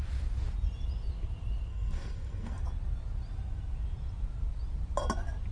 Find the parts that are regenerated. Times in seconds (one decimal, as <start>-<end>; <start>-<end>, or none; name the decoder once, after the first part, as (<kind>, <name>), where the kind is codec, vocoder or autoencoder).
1.7-2.6 (codec, SNAC)